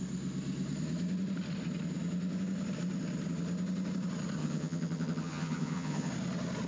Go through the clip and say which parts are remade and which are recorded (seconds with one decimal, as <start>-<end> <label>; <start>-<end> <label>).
0.0-4.4 recorded; 4.4-6.1 remade; 6.1-6.7 recorded